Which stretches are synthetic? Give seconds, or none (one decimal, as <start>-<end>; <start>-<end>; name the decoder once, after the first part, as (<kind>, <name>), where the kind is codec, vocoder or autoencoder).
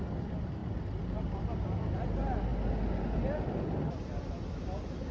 none